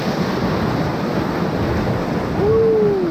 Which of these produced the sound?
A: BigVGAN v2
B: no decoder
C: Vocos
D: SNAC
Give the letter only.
B